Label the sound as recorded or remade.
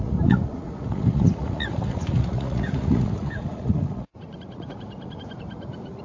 remade